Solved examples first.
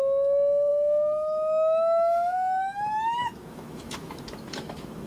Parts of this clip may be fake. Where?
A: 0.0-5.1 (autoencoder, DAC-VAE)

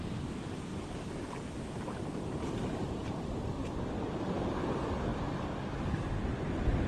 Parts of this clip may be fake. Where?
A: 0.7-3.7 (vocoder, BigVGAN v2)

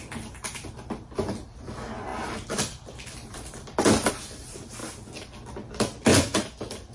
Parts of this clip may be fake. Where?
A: 2.1-4.1 (vocoder, BigVGAN v2)

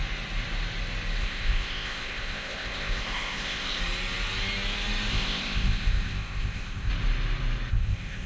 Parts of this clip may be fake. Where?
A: 1.2-3.8 (codec, ZipCodec); 5.1-6.9; 7.7-8.3